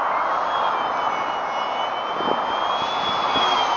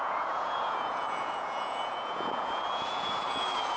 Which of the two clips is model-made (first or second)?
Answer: second